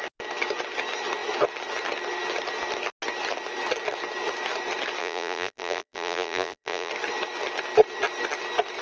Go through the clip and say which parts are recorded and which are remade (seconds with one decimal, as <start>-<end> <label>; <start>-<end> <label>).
0.0-5.0 recorded; 5.0-6.9 remade; 6.9-8.8 recorded